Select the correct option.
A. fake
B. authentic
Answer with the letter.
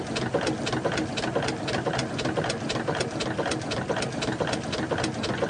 B